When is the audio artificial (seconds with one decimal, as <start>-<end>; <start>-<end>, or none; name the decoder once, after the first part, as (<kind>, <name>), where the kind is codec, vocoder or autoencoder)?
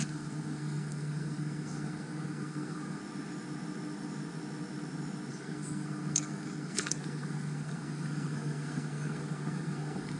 0.0-3.0 (codec, SNAC); 5.3-10.2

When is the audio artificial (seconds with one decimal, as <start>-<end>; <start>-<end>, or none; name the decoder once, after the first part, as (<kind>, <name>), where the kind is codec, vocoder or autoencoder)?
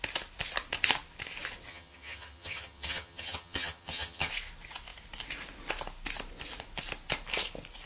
1.7-4.3 (vocoder, HiFi-GAN)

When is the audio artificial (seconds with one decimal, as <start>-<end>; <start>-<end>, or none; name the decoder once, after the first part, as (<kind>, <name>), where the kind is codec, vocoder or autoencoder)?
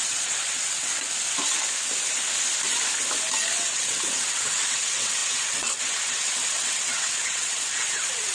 0.0-0.9 (vocoder, WaveNeXt); 3.5-8.3